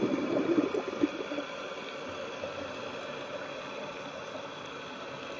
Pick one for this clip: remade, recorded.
recorded